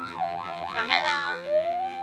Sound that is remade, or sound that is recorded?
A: remade